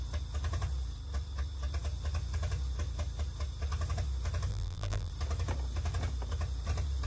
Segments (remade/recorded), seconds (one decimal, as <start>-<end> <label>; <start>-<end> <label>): 0.0-4.5 recorded; 4.5-5.1 remade; 5.1-7.1 recorded